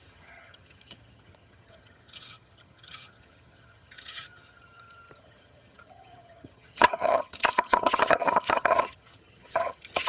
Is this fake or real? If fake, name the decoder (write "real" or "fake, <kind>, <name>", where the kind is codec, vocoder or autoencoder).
fake, vocoder, HiFi-GAN